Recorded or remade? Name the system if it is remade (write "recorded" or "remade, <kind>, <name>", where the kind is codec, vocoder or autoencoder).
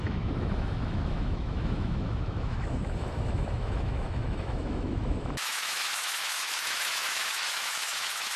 remade, autoencoder, DAC-VAE